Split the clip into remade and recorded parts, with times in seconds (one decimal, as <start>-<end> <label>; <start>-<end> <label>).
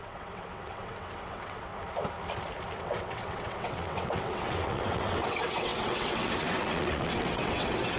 0.0-1.7 remade; 1.7-2.8 recorded; 2.8-8.0 remade